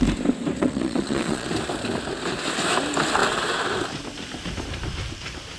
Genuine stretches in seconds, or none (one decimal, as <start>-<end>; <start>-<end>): 0.0-0.6; 1.5-5.6